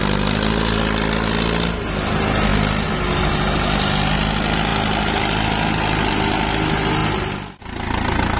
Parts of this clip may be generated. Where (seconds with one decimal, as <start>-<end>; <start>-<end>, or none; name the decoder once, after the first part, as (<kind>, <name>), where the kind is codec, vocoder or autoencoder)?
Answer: none